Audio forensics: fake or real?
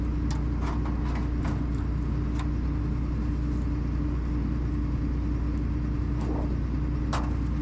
real